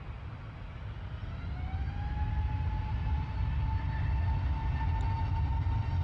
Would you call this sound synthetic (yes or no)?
no